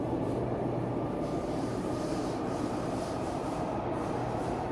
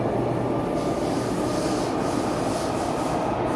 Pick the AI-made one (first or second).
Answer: first